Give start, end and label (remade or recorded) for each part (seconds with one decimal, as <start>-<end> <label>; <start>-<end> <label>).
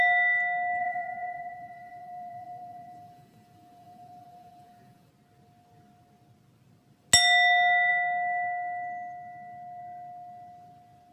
0.0-0.8 recorded; 0.8-5.1 remade; 5.1-11.1 recorded